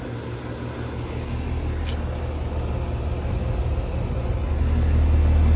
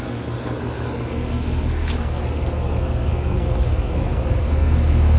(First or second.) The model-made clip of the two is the second